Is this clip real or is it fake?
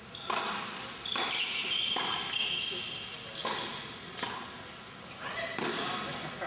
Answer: real